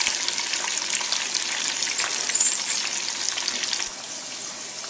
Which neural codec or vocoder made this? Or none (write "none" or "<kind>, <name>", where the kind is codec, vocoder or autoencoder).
none